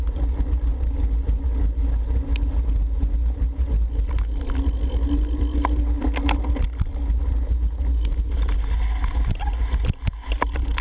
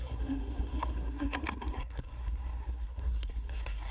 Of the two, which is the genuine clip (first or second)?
first